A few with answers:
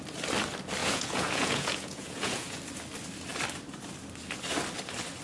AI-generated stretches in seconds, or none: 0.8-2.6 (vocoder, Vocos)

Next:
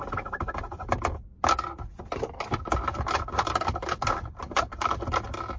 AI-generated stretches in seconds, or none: none

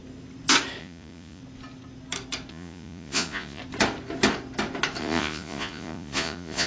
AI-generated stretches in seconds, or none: 0.8-1.4 (vocoder, Vocos); 2.5-3.6; 5.0-6.7

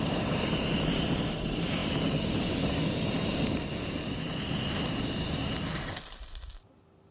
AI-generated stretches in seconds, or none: none

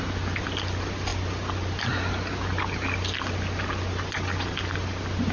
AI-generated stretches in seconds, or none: none

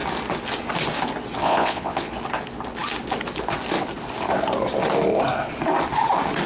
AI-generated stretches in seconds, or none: 1.4-2.1 (vocoder, Vocos)